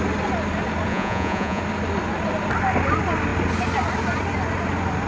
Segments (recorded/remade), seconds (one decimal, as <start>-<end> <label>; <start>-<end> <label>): 0.0-0.9 recorded; 0.9-1.6 remade; 1.6-5.1 recorded

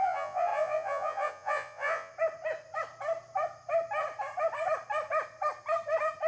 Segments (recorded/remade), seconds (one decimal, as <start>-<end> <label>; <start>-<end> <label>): 0.0-2.1 remade; 2.1-6.3 recorded

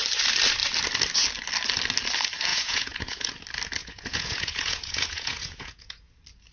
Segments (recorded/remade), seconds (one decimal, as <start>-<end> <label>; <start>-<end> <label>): 0.0-2.5 recorded; 2.5-3.3 remade; 3.3-3.8 recorded; 3.8-6.1 remade; 6.1-6.5 recorded